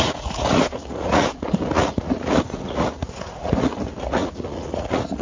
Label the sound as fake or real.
fake